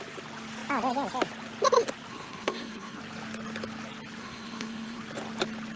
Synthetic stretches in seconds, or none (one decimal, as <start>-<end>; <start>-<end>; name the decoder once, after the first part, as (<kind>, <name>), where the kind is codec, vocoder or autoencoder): 2.1-3.0 (codec, SNAC); 4.2-5.0